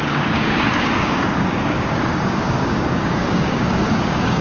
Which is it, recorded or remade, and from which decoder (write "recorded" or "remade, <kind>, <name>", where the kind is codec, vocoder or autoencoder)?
remade, codec, DAC